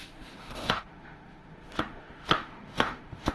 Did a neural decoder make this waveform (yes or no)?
yes